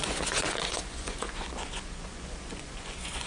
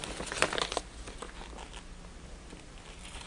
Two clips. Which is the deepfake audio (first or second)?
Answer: first